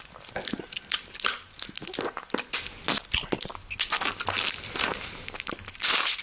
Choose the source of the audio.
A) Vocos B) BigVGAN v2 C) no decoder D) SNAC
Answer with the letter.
C